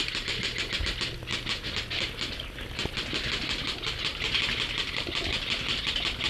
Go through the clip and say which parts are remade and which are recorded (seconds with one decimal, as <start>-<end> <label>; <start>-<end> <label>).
0.0-6.3 recorded